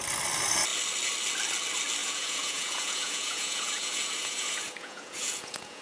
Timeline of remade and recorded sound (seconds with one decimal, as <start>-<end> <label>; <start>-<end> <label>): 0.0-2.0 recorded; 2.0-5.8 remade